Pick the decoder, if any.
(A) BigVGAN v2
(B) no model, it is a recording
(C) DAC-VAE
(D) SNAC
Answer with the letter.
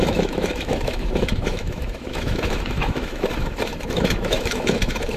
C